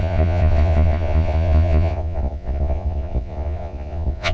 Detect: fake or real fake